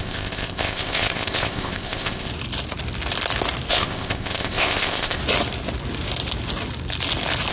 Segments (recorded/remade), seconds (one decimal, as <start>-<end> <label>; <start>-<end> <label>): 0.0-2.3 remade; 2.3-3.7 recorded; 3.7-5.2 remade; 5.2-7.5 recorded